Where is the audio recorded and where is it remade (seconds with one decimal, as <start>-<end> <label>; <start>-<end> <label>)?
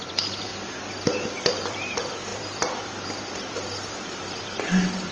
0.0-0.5 remade; 0.5-1.5 recorded; 1.5-5.1 remade